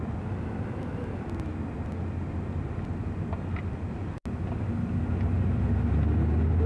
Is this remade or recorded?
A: recorded